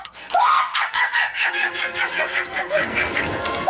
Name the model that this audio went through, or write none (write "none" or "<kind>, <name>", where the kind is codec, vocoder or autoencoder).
codec, SNAC